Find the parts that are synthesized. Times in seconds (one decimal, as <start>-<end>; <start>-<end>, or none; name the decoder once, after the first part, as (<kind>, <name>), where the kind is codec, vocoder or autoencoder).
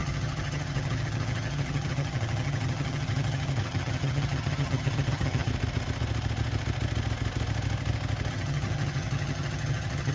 0.0-5.5 (vocoder, HiFi-GAN); 8.3-10.1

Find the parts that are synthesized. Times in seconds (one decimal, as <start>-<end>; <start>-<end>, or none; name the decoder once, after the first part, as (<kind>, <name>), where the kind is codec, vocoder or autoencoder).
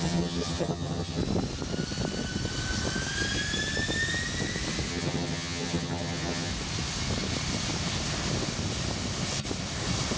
0.0-1.2 (vocoder, HiFi-GAN); 4.9-6.5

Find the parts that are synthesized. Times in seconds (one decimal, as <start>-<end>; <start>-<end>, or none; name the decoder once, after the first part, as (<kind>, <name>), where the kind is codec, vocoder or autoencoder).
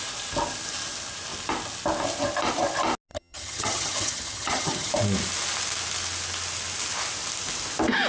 3.1-4.9 (vocoder, HiFi-GAN)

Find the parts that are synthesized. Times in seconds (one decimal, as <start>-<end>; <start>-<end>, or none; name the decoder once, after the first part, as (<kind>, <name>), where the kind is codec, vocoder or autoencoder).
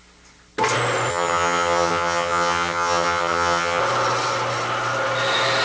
1.1-3.8 (vocoder, HiFi-GAN)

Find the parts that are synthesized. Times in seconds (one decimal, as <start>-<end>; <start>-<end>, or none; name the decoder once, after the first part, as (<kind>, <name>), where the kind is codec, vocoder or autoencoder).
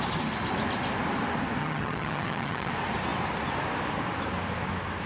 1.6-2.7 (vocoder, HiFi-GAN)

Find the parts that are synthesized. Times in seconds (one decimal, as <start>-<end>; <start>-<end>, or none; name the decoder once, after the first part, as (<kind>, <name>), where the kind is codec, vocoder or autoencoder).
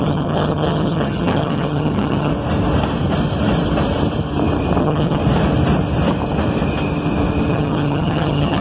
0.0-2.3 (vocoder, HiFi-GAN); 4.8-5.2; 7.5-8.6